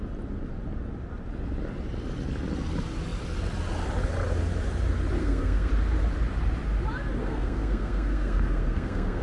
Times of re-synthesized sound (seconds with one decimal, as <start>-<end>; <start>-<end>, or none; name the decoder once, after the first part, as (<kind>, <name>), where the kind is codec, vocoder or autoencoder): 5.2-5.7 (codec, SNAC); 7.2-9.2